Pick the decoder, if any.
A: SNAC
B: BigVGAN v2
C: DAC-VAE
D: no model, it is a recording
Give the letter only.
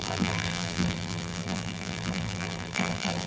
B